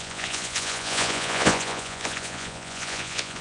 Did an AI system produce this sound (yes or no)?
yes